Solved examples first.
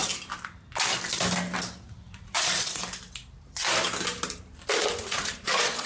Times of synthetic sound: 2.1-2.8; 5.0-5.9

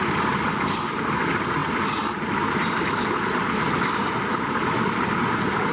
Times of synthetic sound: none